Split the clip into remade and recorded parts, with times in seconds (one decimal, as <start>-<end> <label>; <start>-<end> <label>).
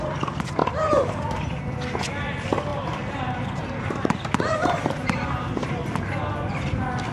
0.0-2.7 recorded; 2.7-5.8 remade; 5.8-7.1 recorded